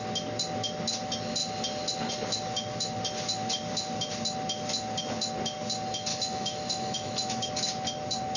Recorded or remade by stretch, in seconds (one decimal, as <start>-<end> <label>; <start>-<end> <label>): 0.0-6.1 recorded; 6.1-7.5 remade; 7.5-8.4 recorded